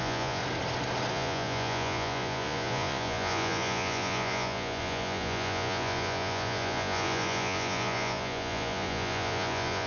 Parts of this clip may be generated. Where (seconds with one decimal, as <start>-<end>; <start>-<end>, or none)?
0.0-0.4; 1.1-9.9